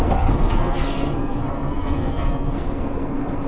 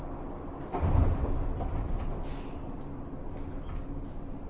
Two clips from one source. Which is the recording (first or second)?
second